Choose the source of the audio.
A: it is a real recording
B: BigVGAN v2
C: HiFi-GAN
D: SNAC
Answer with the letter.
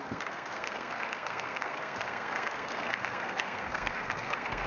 D